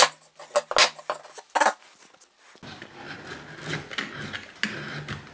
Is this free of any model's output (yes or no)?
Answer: yes